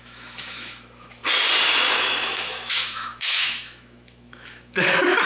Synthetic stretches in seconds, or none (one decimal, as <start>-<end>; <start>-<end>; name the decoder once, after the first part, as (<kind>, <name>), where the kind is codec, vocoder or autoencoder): 0.0-1.2 (autoencoder, DAC-VAE); 1.9-5.3